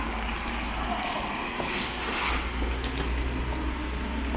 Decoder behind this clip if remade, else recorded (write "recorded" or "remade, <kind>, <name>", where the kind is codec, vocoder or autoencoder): recorded